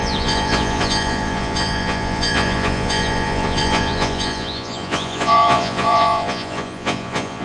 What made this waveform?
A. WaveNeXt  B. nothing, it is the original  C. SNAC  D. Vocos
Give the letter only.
D